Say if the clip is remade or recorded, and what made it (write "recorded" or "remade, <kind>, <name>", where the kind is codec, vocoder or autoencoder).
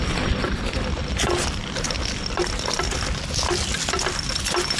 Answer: recorded